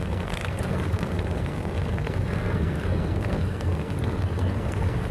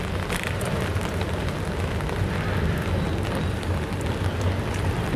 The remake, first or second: first